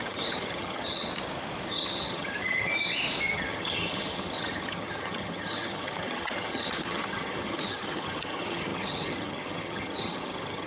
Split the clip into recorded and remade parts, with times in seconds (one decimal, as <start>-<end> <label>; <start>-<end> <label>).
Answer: 0.0-1.1 remade; 1.1-1.7 recorded; 1.7-2.7 remade; 2.7-3.2 recorded; 3.2-10.7 remade